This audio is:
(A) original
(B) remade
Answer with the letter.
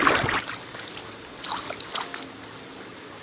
A